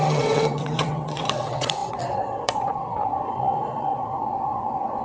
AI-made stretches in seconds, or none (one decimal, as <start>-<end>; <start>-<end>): 0.0-5.0